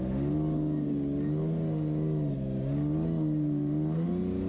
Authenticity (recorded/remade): recorded